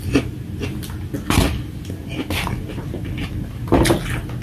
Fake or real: real